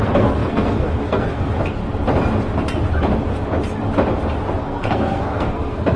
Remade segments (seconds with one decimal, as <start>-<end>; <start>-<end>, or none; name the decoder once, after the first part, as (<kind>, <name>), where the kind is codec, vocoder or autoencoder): 0.0-1.8 (codec, SNAC); 4.6-6.0